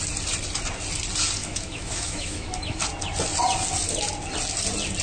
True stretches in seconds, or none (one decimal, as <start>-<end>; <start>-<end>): 0.0-1.4; 2.8-5.0